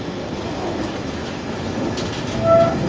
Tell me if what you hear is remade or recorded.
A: recorded